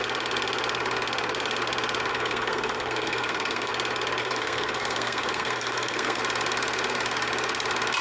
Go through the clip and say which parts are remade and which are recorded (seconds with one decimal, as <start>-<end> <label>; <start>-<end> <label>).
0.0-2.1 recorded; 2.1-3.7 remade; 3.7-4.2 recorded; 4.2-6.2 remade; 6.2-8.0 recorded